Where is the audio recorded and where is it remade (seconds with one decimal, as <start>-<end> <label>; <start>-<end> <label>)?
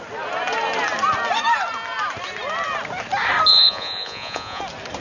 0.0-3.5 recorded; 3.5-4.6 remade; 4.6-5.0 recorded